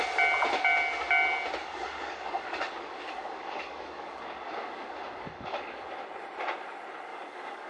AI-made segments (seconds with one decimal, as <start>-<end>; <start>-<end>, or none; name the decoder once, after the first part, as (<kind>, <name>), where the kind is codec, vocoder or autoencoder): 1.6-5.9 (codec, DAC); 7.1-7.7